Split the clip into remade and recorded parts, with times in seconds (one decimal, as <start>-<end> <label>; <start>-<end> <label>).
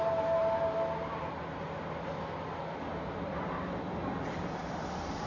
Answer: 0.0-5.3 recorded